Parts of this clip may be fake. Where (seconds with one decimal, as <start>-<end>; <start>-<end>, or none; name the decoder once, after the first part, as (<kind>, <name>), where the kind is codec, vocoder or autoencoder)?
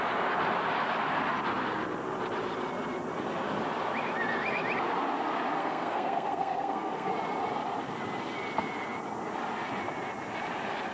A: 5.6-7.1 (codec, SNAC)